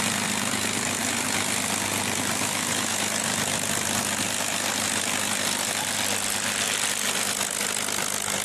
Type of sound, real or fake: real